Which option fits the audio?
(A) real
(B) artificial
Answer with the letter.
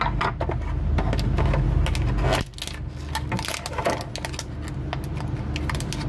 A